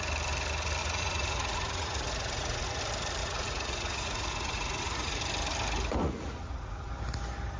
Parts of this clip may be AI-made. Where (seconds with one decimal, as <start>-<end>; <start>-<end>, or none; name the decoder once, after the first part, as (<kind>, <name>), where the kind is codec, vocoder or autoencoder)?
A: 0.8-2.8 (vocoder, Vocos); 3.2-5.2; 6.0-6.9